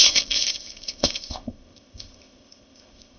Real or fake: fake